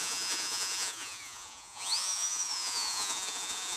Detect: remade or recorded remade